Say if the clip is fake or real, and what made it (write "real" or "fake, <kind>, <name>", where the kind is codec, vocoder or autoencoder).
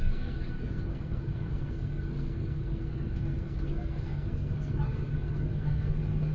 fake, codec, SNAC